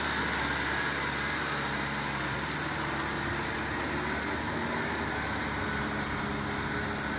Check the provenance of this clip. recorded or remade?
recorded